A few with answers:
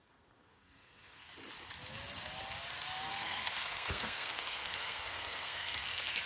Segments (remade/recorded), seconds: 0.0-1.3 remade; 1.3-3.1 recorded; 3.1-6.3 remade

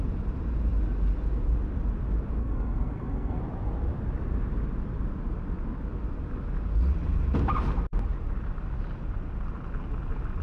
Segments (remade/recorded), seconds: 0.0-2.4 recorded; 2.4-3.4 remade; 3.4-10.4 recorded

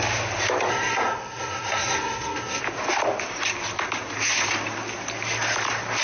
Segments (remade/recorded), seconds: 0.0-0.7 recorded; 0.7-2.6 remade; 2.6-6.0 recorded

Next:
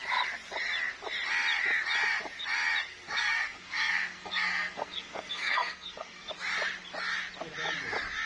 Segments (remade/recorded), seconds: 0.0-2.9 recorded; 2.9-6.3 remade; 6.3-8.3 recorded